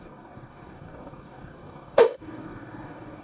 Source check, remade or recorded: remade